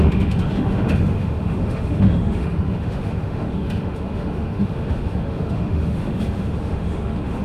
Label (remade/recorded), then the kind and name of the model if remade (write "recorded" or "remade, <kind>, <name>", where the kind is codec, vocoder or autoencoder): remade, autoencoder, DAC-VAE